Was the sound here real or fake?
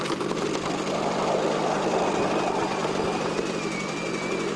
real